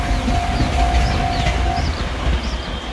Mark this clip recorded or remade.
recorded